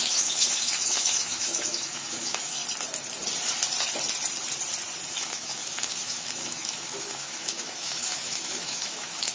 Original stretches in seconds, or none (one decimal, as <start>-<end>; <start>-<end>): 2.6-5.1